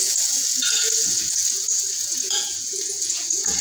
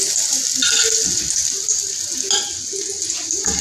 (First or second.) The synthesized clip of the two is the first